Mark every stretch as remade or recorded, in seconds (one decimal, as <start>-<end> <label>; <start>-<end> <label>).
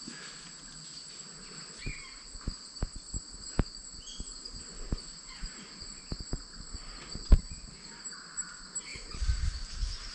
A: 0.0-1.9 recorded; 1.9-4.6 remade; 4.6-7.1 recorded; 7.1-7.9 remade; 7.9-8.9 recorded; 8.9-9.5 remade; 9.5-10.1 recorded